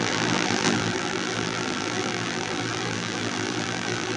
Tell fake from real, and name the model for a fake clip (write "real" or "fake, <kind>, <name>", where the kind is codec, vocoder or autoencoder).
fake, vocoder, BigVGAN v2